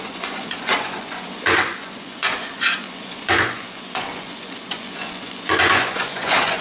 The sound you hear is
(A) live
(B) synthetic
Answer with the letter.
B